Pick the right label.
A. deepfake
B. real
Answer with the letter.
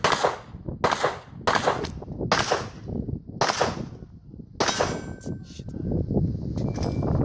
B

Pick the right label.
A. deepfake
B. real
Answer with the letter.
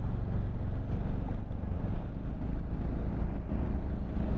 B